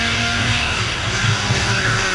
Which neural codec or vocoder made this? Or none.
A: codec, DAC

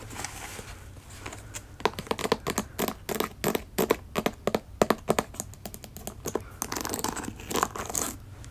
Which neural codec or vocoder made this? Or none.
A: none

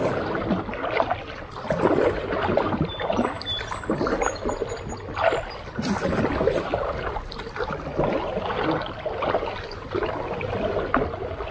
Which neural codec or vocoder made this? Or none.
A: none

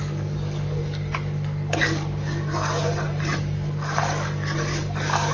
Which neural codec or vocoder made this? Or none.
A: codec, DAC